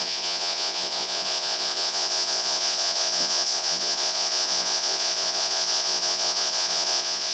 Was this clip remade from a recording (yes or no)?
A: yes